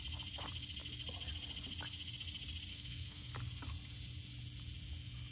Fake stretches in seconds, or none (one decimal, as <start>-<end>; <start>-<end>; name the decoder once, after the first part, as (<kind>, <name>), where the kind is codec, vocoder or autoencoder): 2.7-3.3 (codec, SNAC)